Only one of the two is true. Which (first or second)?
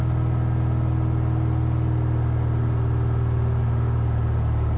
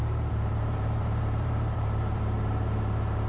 first